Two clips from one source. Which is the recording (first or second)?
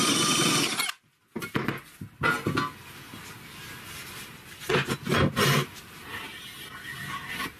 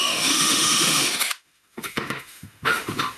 first